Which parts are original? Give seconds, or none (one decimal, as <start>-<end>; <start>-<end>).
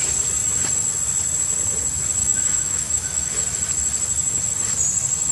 0.0-2.2; 3.3-5.3